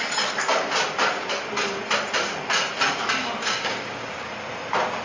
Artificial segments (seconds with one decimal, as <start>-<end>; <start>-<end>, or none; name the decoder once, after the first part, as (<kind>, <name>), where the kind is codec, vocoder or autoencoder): 3.4-4.3 (codec, DAC)

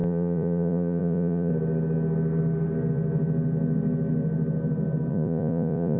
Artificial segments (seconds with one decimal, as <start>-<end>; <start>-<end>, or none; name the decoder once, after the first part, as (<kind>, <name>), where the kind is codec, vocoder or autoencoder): 0.0-1.5 (vocoder, Vocos); 5.1-6.0

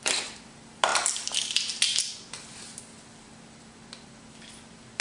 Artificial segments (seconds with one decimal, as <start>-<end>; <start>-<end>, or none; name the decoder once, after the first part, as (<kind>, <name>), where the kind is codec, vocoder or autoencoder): none

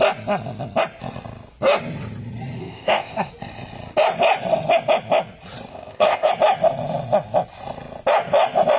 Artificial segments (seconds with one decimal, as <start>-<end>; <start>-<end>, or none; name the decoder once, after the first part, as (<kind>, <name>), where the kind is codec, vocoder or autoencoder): 2.6-3.3 (codec, ZipCodec); 5.7-6.3

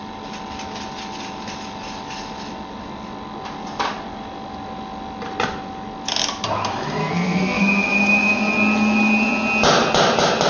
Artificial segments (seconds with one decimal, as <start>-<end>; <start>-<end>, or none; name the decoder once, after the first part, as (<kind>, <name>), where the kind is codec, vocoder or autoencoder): 7.0-7.6 (codec, SNAC)

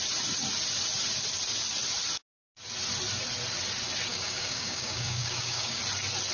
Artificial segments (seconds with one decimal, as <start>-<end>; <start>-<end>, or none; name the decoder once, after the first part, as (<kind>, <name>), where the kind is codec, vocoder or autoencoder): 4.1-5.8 (codec, DAC)